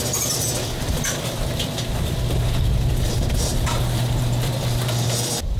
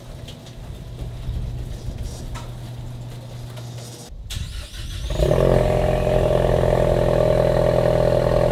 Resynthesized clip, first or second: first